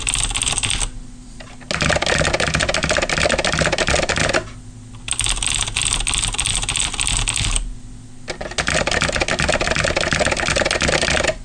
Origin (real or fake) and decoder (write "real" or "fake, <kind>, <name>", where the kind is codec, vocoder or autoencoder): real